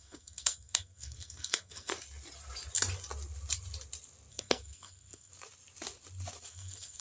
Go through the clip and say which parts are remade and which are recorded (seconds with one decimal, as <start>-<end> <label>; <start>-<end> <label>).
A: 0.0-1.9 remade; 1.9-4.3 recorded; 4.3-5.3 remade; 5.3-6.5 recorded; 6.5-7.0 remade